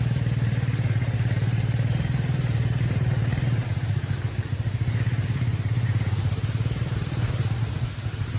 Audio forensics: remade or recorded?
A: remade